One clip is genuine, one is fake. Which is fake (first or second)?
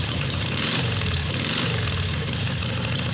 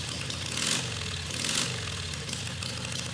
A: first